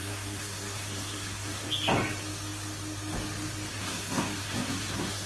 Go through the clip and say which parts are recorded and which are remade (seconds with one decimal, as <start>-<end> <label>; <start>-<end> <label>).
0.0-1.7 remade; 1.7-3.7 recorded; 3.7-5.3 remade